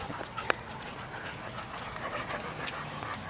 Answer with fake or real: real